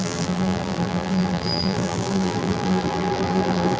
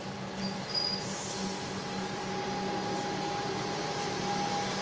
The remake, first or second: first